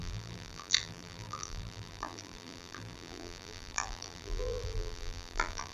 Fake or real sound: fake